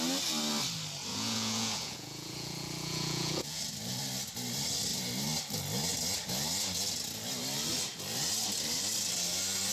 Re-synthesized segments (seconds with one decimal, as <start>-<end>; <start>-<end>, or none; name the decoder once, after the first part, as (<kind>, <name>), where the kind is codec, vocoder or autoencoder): 1.1-3.6 (vocoder, Vocos)

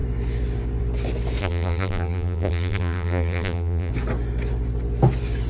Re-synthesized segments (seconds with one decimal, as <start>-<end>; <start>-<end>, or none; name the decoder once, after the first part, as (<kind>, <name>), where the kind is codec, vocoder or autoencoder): 1.4-3.9 (vocoder, BigVGAN v2)